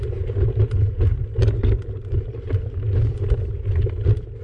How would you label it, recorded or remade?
recorded